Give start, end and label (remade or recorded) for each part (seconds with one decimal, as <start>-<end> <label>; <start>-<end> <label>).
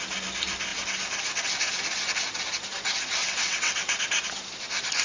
0.0-3.2 recorded; 3.2-3.9 remade; 3.9-5.0 recorded